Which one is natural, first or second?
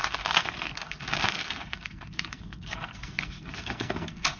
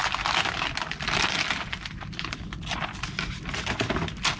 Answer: second